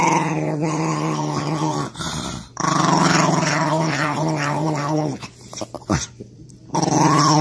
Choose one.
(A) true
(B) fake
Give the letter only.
B